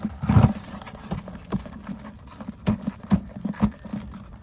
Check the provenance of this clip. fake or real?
real